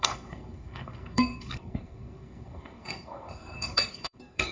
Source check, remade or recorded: remade